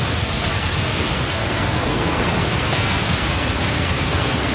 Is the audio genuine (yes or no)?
no